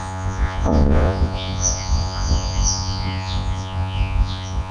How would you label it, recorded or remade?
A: remade